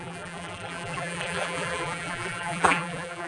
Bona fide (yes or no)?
no